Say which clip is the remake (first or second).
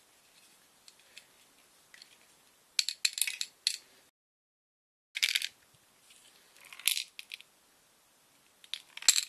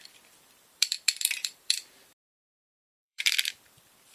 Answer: second